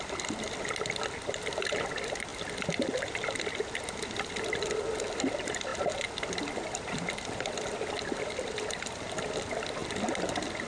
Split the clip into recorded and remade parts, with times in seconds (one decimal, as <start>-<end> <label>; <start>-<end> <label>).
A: 0.0-2.3 remade; 2.3-5.2 recorded; 5.2-9.8 remade; 9.8-10.7 recorded